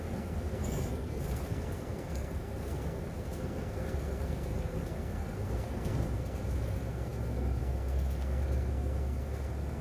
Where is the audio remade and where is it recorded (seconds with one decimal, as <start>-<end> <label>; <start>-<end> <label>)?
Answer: 0.0-9.8 remade